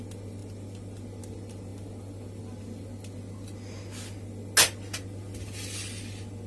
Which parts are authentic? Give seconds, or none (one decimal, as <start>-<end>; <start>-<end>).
0.0-6.5